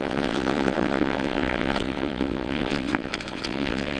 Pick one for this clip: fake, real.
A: fake